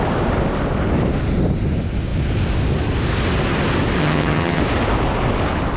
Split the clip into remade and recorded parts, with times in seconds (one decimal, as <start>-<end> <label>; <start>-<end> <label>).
0.0-4.0 recorded; 4.0-4.6 remade; 4.6-5.8 recorded